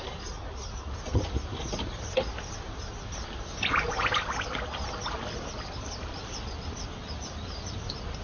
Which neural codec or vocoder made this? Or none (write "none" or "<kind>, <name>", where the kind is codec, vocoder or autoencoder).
none